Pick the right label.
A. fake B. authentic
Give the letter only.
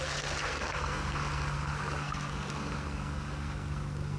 A